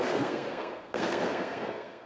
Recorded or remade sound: remade